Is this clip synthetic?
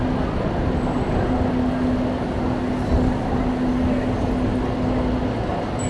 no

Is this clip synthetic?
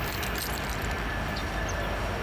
no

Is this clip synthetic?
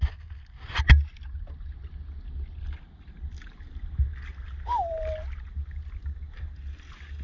no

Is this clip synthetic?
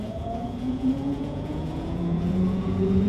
yes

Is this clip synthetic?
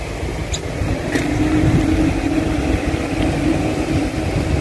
no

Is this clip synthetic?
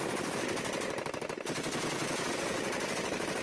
no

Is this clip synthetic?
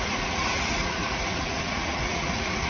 yes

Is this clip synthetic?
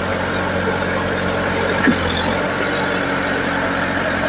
no